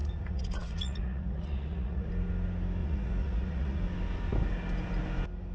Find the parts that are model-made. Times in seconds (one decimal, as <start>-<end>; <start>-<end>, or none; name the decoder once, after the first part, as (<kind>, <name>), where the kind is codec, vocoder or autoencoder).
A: 0.0-2.1 (vocoder, Vocos); 2.8-3.8